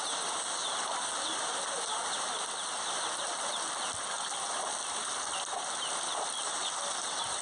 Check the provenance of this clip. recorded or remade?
remade